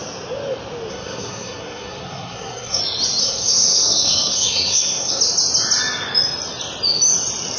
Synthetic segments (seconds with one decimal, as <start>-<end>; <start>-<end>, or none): 0.9-2.8; 3.2-5.2